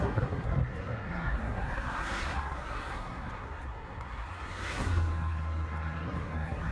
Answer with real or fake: fake